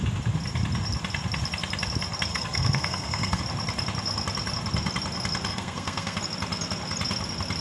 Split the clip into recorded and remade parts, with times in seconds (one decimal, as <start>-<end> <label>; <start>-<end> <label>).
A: 0.0-2.3 recorded; 2.3-3.4 remade; 3.4-5.5 recorded; 5.5-6.2 remade; 6.2-7.6 recorded